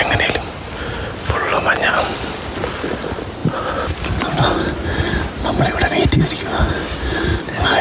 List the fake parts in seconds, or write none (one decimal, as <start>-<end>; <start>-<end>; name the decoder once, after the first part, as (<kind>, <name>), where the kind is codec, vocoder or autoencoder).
none